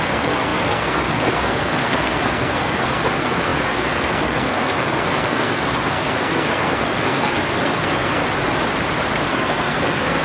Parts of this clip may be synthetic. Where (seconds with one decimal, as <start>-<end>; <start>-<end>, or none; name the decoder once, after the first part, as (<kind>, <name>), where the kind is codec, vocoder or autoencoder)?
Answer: 0.0-8.2 (codec, SNAC); 9.3-10.2